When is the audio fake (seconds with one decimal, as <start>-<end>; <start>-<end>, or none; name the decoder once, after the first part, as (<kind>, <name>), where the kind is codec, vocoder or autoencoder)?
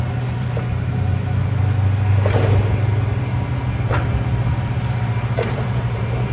0.0-1.1 (vocoder, BigVGAN v2); 4.9-6.3